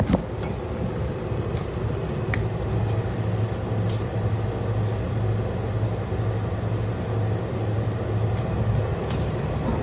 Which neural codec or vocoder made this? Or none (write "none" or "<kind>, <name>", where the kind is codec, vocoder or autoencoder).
none